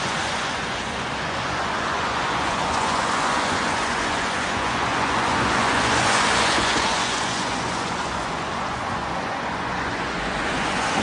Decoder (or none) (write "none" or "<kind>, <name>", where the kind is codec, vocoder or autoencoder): vocoder, Vocos